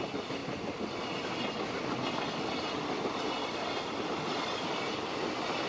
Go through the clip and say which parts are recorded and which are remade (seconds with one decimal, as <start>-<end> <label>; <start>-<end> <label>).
0.0-5.7 recorded